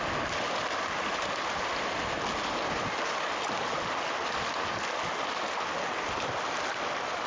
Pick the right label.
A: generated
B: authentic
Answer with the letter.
B